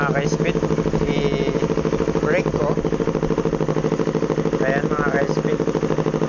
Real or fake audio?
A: real